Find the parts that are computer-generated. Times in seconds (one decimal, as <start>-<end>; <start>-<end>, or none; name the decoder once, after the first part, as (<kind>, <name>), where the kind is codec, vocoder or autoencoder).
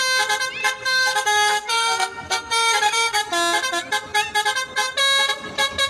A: 0.6-3.2 (codec, SNAC)